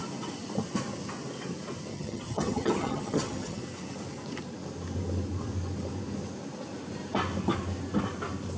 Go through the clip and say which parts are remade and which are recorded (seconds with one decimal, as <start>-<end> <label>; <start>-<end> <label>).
0.0-1.9 recorded; 1.9-3.6 remade; 3.6-8.6 recorded